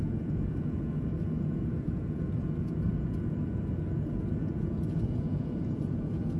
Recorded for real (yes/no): no